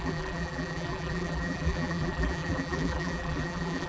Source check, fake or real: fake